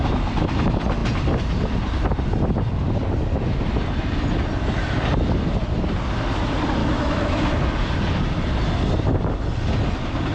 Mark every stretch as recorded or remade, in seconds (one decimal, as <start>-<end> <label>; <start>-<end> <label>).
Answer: 0.0-6.8 recorded; 6.8-7.5 remade; 7.5-10.3 recorded

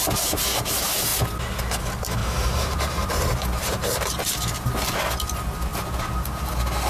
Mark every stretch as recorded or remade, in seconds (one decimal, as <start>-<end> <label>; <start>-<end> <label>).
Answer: 0.0-2.2 recorded; 2.2-5.0 remade; 5.0-5.7 recorded; 5.7-6.5 remade; 6.5-6.9 recorded